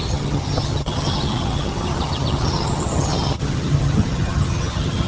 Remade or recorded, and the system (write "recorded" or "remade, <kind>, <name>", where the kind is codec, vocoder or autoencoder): remade, vocoder, HiFi-GAN